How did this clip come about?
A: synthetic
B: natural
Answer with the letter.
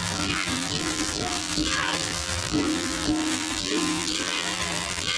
A